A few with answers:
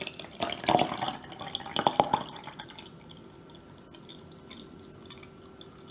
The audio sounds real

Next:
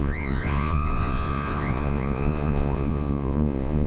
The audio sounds fake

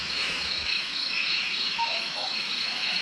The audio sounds fake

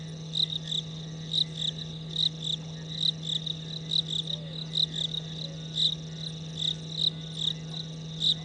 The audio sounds real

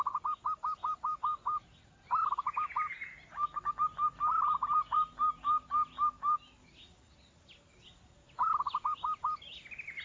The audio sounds real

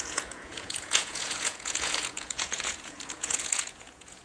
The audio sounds fake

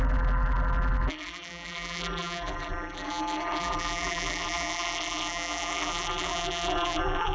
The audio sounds fake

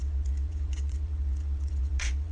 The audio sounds fake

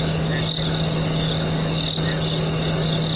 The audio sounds real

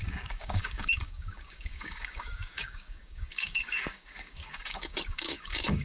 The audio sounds fake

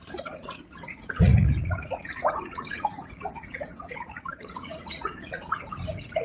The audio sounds fake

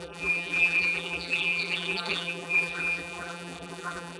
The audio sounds fake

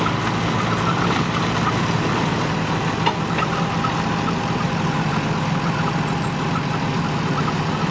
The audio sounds real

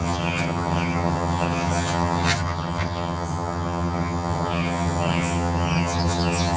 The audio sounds fake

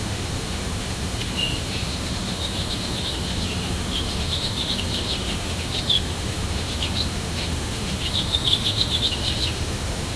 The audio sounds fake